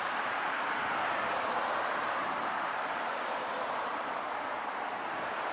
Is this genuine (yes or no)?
yes